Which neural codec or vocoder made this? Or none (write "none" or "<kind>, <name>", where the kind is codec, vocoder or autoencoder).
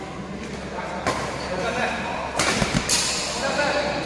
none